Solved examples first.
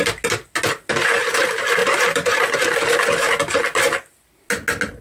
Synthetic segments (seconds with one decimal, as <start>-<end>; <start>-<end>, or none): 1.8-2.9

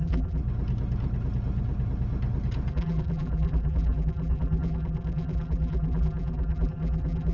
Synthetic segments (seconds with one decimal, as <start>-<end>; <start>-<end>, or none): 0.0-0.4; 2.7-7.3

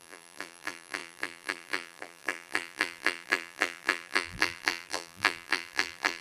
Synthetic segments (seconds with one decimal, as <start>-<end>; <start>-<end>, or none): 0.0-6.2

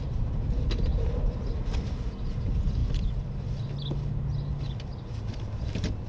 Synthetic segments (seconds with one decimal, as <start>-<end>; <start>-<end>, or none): 0.9-1.5

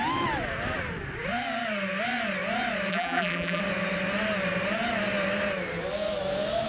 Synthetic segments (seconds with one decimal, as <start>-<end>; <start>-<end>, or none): 2.9-3.6

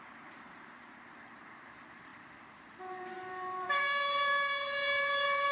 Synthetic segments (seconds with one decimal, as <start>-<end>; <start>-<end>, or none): 0.0-5.5